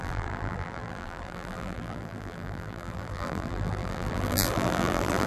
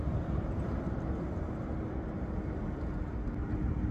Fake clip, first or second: first